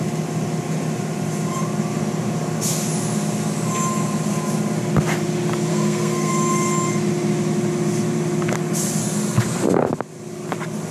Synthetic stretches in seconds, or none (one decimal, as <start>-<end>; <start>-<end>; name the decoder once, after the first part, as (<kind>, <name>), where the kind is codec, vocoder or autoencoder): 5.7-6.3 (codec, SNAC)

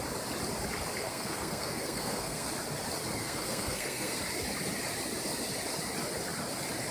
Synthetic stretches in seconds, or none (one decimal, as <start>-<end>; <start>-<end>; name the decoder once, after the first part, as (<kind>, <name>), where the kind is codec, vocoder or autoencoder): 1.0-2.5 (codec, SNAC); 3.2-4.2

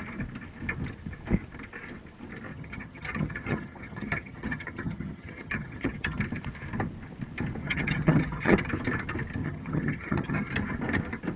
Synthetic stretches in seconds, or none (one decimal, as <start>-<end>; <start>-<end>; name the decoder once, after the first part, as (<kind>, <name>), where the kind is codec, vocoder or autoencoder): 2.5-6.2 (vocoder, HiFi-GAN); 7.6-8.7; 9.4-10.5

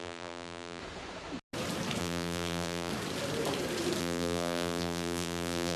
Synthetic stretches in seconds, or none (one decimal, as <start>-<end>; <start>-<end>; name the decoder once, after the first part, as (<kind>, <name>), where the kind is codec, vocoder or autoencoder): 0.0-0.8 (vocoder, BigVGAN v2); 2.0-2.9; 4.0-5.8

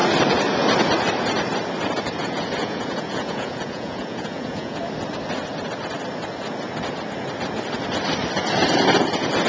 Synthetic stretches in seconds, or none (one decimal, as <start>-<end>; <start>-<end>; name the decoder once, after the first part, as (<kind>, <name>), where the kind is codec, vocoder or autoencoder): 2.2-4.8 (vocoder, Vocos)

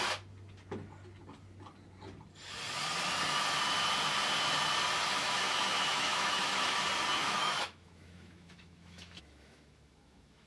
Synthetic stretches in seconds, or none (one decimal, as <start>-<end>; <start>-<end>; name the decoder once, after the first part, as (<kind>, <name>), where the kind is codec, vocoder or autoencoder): 5.2-6.8 (autoencoder, DAC-VAE); 7.2-10.5

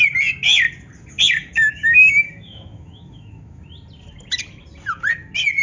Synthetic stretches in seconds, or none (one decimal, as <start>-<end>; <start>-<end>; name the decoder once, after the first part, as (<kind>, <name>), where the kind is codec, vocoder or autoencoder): 1.4-3.6 (autoencoder, DAC-VAE)